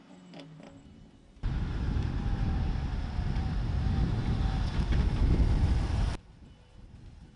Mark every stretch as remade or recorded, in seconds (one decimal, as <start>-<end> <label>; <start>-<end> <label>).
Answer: 0.0-7.4 recorded